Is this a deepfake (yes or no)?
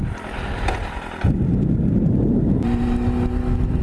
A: no